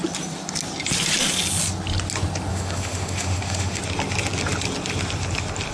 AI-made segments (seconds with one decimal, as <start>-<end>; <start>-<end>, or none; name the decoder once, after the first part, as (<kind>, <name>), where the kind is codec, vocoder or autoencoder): 2.5-3.8 (autoencoder, DAC-VAE)